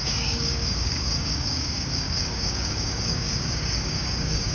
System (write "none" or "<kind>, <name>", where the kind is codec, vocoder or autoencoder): codec, DAC